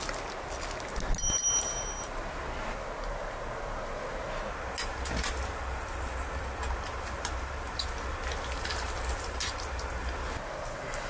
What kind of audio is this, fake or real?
real